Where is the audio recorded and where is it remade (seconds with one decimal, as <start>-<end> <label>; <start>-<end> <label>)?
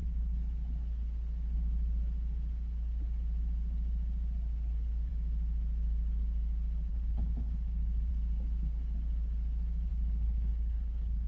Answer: 0.0-6.9 recorded; 6.9-8.1 remade; 8.1-9.9 recorded; 9.9-11.3 remade